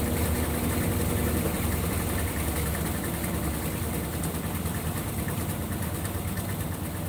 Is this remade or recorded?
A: recorded